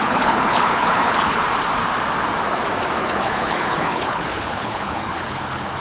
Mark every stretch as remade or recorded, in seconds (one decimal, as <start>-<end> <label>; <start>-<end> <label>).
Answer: 0.0-1.4 remade; 1.4-3.0 recorded; 3.0-5.8 remade